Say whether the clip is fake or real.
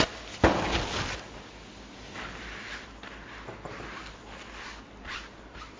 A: real